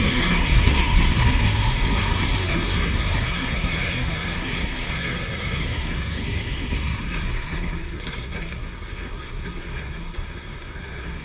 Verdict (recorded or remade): remade